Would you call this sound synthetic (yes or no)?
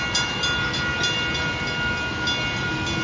no